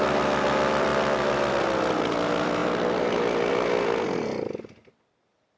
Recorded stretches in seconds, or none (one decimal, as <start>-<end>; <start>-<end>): 0.0-5.6